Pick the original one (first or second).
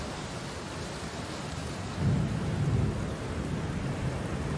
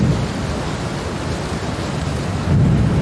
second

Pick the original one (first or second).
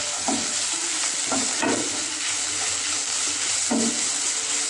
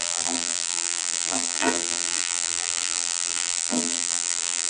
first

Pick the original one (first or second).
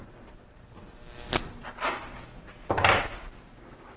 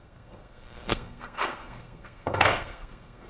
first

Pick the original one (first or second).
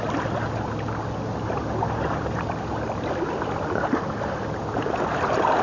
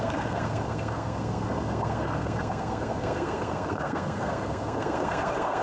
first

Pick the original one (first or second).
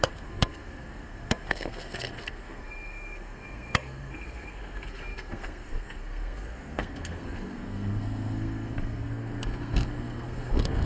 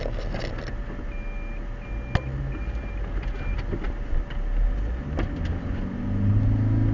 second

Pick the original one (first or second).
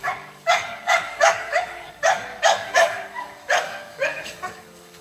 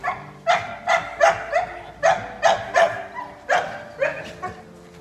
second